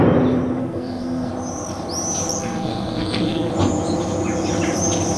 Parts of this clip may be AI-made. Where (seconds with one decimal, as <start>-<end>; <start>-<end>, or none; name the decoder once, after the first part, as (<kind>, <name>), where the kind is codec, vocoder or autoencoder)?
0.6-1.3 (codec, SNAC); 2.4-3.5